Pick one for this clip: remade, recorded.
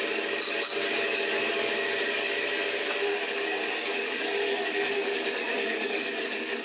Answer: remade